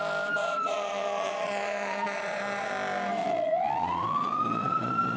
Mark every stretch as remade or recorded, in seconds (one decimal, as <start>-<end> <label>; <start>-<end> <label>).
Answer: 0.0-0.4 recorded; 0.4-2.7 remade; 2.7-3.2 recorded; 3.2-5.2 remade

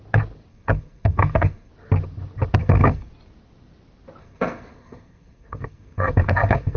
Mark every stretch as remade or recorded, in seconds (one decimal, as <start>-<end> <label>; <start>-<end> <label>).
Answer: 0.0-0.5 recorded; 0.5-1.7 remade; 1.7-2.6 recorded; 2.6-3.1 remade; 3.1-4.2 recorded; 4.2-6.8 remade

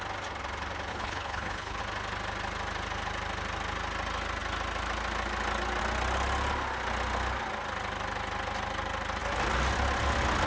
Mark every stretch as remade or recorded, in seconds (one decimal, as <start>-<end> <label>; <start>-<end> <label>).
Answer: 0.0-0.9 recorded; 0.9-1.8 remade; 1.8-10.5 recorded

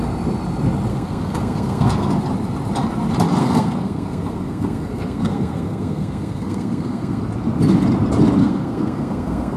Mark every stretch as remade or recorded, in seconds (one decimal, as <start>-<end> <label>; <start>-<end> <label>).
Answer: 0.0-0.9 recorded; 0.9-2.1 remade; 2.1-3.4 recorded; 3.4-7.2 remade; 7.2-8.4 recorded; 8.4-9.6 remade

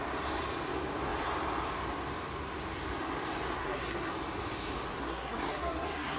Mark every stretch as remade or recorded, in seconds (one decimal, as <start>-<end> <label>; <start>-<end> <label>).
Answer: 0.0-3.6 recorded; 3.6-4.1 remade; 4.1-4.9 recorded; 4.9-6.2 remade

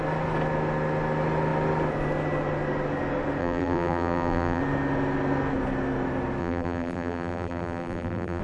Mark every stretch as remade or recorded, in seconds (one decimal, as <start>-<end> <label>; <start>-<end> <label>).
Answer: 0.0-3.4 recorded; 3.4-4.6 remade; 4.6-6.4 recorded; 6.4-8.4 remade

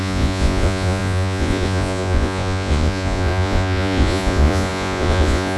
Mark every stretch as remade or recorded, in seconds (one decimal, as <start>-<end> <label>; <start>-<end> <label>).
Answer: 0.0-5.6 remade